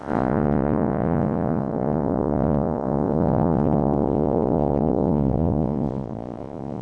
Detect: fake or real fake